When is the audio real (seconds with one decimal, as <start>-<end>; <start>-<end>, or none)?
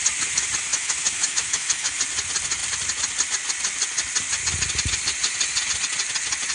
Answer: 0.0-0.7; 2.0-6.5